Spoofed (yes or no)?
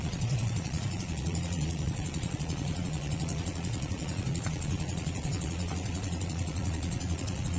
yes